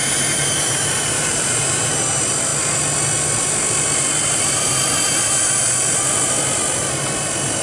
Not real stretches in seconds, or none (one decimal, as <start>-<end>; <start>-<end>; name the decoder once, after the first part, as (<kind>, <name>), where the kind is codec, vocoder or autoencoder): 0.0-1.9 (vocoder, BigVGAN v2)